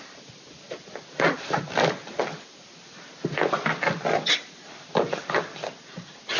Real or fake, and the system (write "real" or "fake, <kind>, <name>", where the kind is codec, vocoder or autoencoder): real